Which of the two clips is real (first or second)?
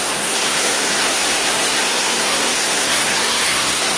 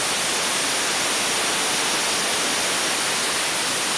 second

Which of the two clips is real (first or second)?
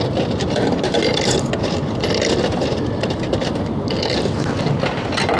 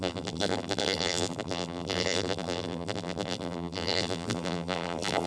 first